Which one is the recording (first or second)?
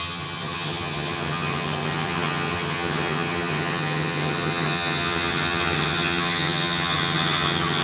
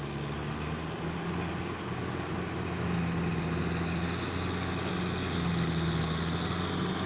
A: second